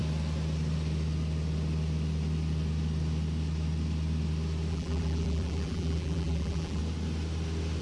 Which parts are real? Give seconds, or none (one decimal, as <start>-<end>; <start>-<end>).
0.0-4.7; 6.8-7.8